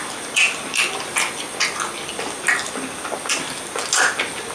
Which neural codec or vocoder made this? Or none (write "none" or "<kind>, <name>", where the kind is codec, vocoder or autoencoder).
none